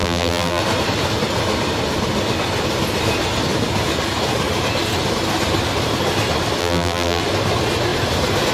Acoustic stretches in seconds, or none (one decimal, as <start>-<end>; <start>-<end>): 0.6-6.6; 7.2-8.5